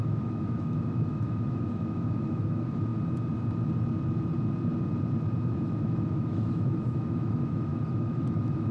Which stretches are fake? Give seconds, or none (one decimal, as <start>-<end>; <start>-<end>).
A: 0.0-2.9; 5.5-8.7